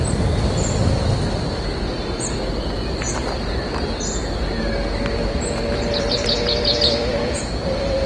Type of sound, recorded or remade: recorded